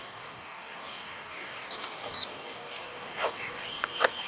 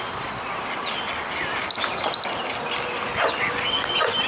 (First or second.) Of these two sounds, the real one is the second